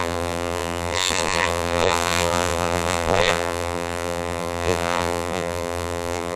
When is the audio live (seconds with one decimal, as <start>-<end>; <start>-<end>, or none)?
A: none